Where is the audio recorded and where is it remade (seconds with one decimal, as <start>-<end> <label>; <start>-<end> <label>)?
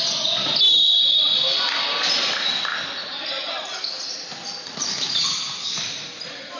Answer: 0.0-6.6 recorded